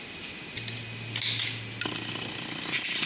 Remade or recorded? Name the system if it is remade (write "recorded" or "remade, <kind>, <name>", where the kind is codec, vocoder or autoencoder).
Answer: recorded